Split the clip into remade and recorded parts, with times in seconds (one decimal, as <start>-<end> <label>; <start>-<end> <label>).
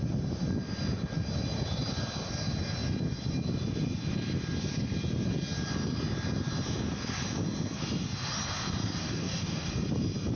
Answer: 0.0-9.0 recorded; 9.0-9.7 remade; 9.7-10.4 recorded